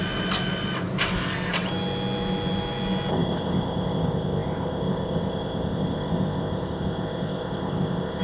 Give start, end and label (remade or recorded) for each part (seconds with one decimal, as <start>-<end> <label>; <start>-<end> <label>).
0.0-3.1 recorded; 3.1-8.2 remade